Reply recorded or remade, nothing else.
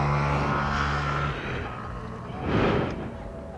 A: recorded